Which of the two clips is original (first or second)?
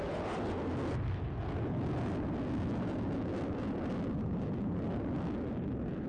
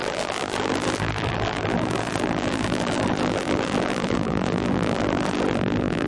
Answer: first